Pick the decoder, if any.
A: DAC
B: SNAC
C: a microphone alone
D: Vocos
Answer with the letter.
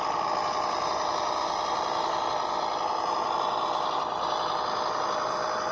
C